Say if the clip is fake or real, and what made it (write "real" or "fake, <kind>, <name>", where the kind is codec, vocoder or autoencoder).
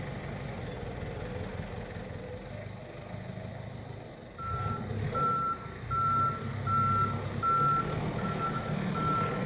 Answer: real